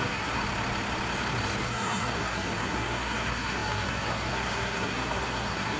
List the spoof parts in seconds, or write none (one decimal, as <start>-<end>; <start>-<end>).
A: 0.0-0.4; 1.6-5.8